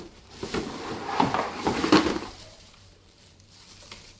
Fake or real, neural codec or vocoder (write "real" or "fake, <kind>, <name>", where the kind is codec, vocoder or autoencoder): fake, vocoder, BigVGAN v2